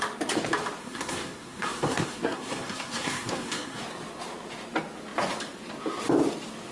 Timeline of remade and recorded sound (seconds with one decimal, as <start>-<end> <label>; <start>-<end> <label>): 0.0-0.8 recorded; 0.8-3.8 remade; 3.8-6.7 recorded